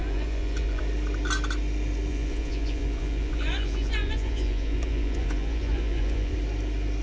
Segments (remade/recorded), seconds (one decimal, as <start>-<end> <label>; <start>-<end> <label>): 0.0-0.8 remade; 0.8-2.1 recorded; 2.1-6.3 remade; 6.3-7.0 recorded